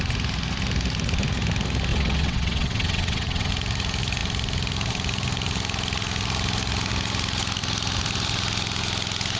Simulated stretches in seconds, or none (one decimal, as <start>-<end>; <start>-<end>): 1.9-3.5